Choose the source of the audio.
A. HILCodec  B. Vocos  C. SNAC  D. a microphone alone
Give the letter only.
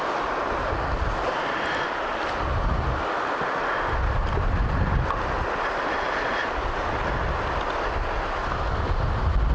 D